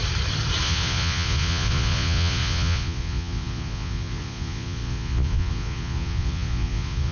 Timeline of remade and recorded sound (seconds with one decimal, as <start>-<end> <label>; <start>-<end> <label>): 0.0-0.6 recorded; 0.6-7.1 remade